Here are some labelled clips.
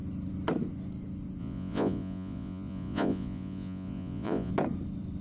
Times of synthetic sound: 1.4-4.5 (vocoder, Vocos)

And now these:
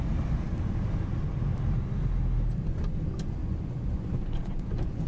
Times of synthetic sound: 3.4-5.1 (vocoder, Vocos)

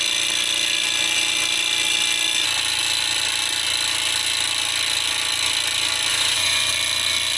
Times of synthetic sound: 6.1-6.7 (vocoder, Vocos)

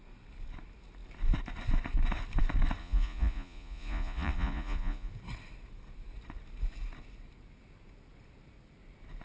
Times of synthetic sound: 2.8-5.1 (vocoder, Vocos)

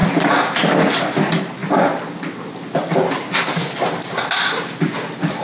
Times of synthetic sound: none

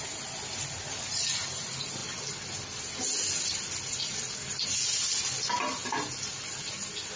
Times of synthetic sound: none